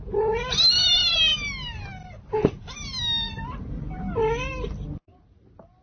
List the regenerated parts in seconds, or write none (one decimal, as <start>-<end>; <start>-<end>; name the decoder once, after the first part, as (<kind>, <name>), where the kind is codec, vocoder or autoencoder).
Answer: none

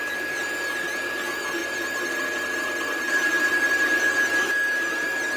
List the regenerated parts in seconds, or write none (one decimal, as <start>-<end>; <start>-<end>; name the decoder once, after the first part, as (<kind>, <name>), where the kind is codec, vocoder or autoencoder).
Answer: none

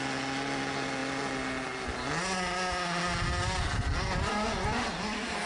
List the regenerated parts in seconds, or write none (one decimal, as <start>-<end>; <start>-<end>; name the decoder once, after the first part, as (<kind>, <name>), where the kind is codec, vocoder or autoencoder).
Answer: none

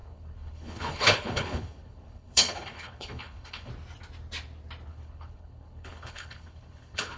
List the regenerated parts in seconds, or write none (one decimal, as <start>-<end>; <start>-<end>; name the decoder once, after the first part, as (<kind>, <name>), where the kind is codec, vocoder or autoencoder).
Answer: 0.0-3.7 (codec, HILCodec); 4.9-7.2

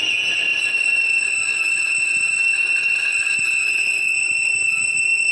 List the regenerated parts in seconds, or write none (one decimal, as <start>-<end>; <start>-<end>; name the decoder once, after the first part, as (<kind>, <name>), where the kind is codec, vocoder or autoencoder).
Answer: none